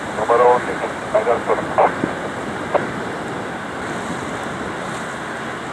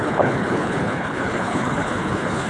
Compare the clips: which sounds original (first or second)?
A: first